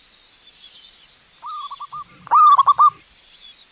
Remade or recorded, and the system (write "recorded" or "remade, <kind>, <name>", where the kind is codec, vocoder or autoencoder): recorded